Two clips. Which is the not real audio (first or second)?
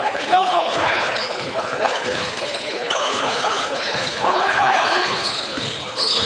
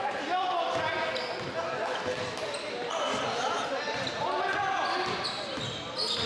first